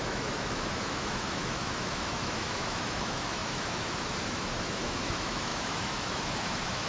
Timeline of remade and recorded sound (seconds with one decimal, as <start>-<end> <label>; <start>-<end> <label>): 0.0-6.9 remade